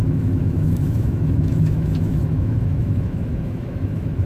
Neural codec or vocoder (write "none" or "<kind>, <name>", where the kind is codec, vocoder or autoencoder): autoencoder, DAC-VAE